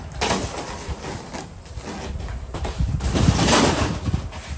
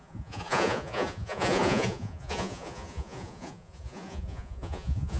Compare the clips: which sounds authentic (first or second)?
first